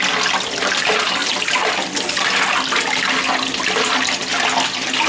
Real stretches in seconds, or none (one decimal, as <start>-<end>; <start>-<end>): 0.0-1.2; 4.3-5.1